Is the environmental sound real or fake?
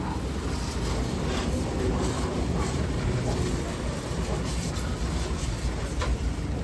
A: real